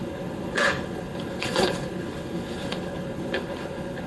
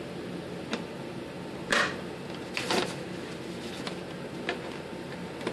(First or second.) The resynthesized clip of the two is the first